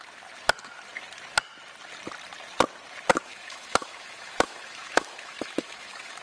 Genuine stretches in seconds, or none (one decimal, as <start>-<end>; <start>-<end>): 0.0-3.1

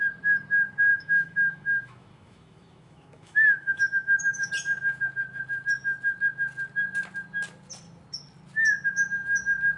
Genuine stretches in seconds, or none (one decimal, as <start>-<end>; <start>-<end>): 0.0-0.9; 4.5-9.8

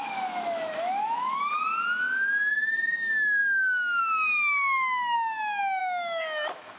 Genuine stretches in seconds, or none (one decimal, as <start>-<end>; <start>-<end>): 1.5-2.5

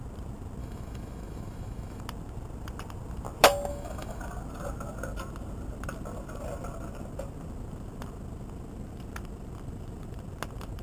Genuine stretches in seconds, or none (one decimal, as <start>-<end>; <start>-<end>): 0.0-0.6; 2.0-3.7; 4.2-10.8

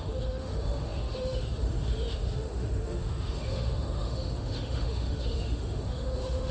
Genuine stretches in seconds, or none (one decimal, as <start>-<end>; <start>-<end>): none

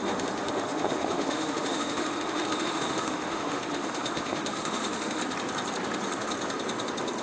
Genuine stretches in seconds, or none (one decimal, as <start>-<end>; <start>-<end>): 5.2-7.2

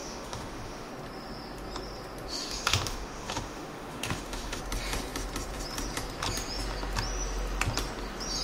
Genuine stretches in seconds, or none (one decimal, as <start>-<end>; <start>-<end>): 0.9-2.3; 4.6-8.4

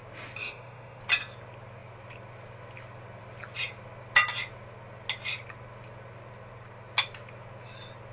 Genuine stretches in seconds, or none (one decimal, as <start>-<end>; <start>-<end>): 0.0-0.4; 1.0-8.1